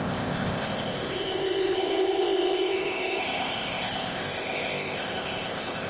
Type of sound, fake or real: fake